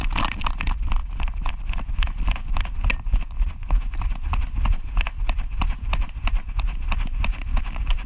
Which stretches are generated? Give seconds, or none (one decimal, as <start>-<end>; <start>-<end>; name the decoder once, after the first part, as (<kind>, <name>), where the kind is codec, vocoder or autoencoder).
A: none